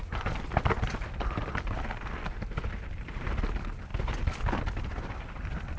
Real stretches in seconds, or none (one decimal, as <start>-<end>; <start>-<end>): 3.9-4.8